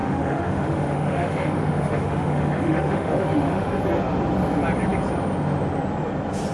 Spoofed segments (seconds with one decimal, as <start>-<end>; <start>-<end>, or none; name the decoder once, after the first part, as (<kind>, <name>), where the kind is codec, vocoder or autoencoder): 0.0-3.8 (autoencoder, DAC-VAE)

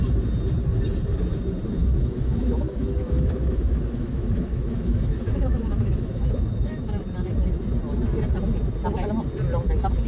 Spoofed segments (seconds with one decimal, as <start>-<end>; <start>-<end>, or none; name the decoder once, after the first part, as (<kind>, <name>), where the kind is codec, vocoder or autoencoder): 1.8-6.9 (autoencoder, DAC-VAE)

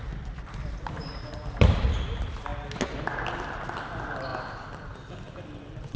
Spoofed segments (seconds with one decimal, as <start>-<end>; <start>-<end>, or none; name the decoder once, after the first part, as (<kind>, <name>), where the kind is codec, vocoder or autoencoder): none

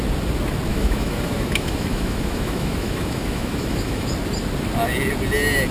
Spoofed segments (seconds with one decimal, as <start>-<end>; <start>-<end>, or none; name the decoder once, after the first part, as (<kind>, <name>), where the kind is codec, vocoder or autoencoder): 0.7-4.1 (autoencoder, DAC-VAE)

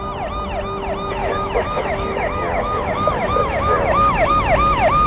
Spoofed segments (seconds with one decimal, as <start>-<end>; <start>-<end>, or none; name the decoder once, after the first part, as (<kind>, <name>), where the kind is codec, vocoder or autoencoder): 1.2-4.3 (autoencoder, DAC-VAE)